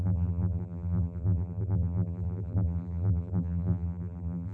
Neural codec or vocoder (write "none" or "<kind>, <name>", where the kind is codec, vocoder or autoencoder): vocoder, BigVGAN v2